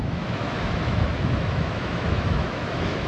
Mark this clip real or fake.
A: fake